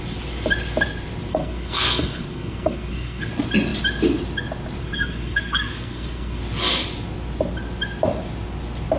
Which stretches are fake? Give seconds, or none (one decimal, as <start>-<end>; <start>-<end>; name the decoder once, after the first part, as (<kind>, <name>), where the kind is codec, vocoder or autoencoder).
1.3-3.3 (codec, SNAC); 4.8-6.4